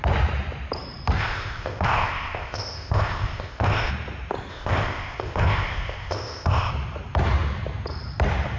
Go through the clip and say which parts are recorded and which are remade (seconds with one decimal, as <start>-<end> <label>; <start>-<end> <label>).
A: 0.0-1.2 recorded; 1.2-3.9 remade; 3.9-4.5 recorded; 4.5-6.7 remade; 6.7-8.6 recorded